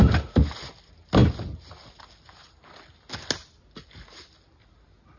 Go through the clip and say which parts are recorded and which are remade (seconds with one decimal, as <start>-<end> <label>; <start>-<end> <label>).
0.0-5.2 recorded